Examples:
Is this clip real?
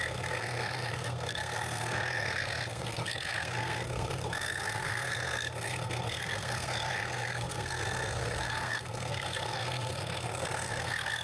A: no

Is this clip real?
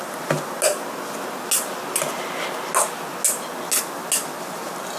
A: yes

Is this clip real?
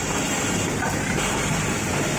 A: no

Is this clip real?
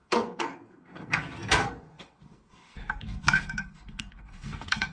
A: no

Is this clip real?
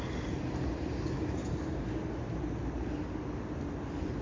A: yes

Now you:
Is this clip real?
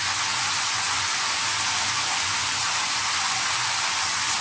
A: no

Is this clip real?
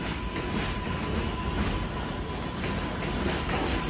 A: yes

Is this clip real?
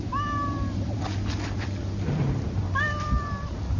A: no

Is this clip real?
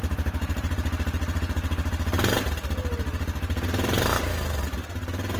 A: no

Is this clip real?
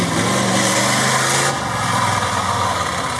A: yes